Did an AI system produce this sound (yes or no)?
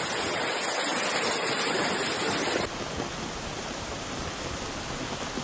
no